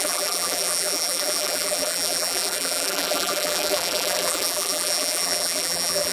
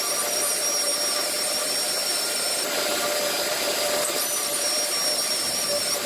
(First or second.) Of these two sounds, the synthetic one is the first